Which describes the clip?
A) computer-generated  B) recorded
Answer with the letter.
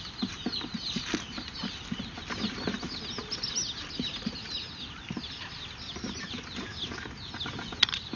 B